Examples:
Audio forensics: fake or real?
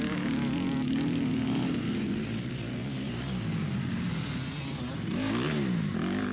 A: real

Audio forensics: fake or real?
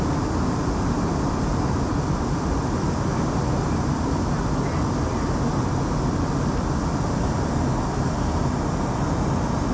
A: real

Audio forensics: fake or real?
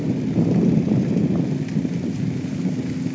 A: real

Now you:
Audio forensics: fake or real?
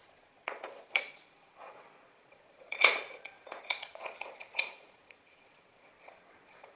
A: fake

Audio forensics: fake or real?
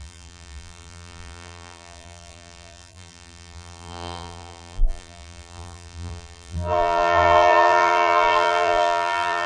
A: fake